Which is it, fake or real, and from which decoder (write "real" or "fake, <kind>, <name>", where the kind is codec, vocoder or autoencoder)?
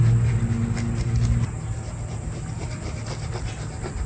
real